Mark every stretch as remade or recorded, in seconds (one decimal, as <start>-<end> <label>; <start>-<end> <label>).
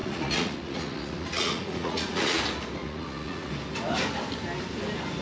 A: 0.0-2.4 remade; 2.4-2.8 recorded; 2.8-3.5 remade; 3.5-5.2 recorded